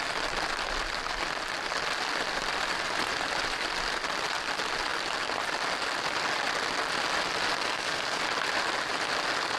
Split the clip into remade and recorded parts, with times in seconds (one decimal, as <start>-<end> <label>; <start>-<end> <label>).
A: 0.0-7.6 recorded; 7.6-8.2 remade; 8.2-9.6 recorded